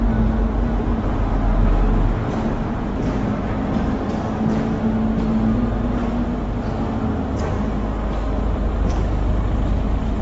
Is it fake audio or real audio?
real